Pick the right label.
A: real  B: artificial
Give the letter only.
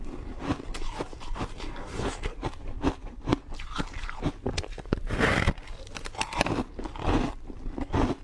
B